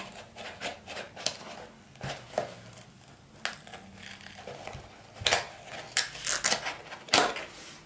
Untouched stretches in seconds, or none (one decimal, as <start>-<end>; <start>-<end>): 0.0-6.8; 7.3-7.9